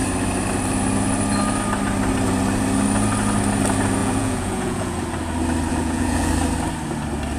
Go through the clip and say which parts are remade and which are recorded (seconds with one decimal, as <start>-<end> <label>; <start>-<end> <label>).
0.0-4.0 recorded; 4.0-5.0 remade; 5.0-5.7 recorded; 5.7-6.3 remade; 6.3-7.4 recorded